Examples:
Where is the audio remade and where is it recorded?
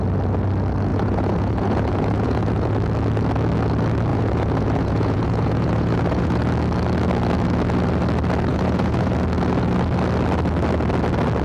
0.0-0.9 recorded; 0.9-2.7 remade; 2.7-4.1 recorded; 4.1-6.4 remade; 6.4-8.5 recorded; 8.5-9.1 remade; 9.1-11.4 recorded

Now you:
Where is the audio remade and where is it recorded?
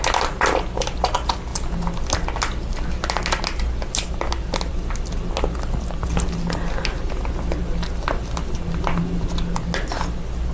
0.0-10.5 recorded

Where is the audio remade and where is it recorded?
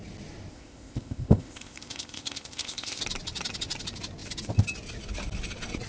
0.0-0.5 recorded; 0.5-3.0 remade; 3.0-5.9 recorded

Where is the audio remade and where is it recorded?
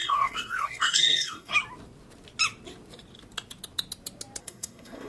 0.0-1.5 remade; 1.5-4.4 recorded; 4.4-5.1 remade